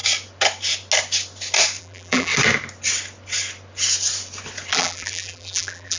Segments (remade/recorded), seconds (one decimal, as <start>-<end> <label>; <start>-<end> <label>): 0.0-1.8 recorded; 1.8-2.3 remade; 2.3-4.7 recorded; 4.7-6.0 remade